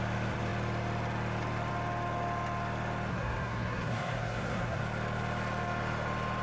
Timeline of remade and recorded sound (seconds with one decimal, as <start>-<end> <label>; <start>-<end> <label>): 0.0-3.1 recorded; 3.1-4.8 remade; 4.8-6.4 recorded